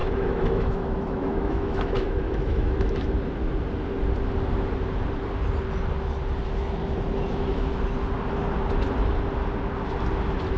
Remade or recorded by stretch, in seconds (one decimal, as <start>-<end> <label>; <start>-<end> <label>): 0.0-3.1 remade; 3.1-10.6 recorded